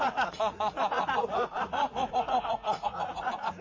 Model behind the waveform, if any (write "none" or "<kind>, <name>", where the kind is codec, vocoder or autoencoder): vocoder, Vocos